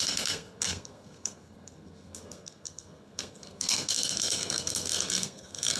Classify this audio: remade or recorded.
remade